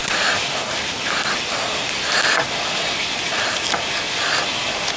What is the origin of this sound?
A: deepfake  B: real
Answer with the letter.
B